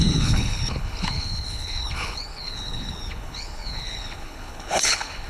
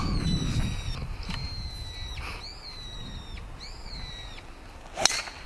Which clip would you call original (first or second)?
second